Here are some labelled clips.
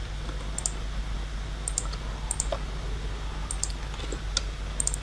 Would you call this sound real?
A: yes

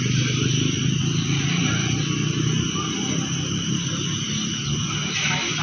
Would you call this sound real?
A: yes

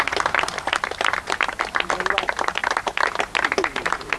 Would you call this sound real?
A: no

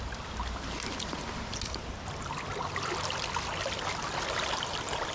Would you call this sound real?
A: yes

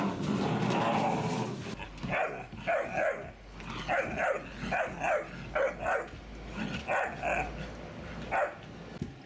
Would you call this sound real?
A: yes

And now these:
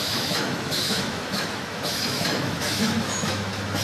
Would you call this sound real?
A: no